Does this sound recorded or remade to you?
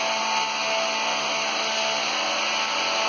recorded